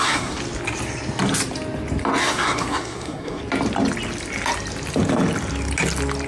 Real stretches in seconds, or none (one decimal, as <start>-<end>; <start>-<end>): 0.4-2.2; 3.4-6.3